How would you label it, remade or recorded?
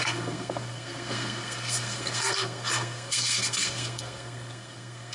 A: remade